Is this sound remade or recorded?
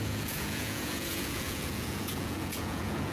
remade